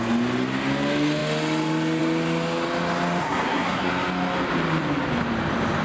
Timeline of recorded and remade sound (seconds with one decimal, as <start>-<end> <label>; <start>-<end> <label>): 0.0-3.2 recorded; 3.2-3.9 remade; 3.9-5.8 recorded